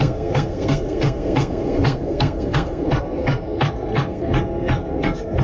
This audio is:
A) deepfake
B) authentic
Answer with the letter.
A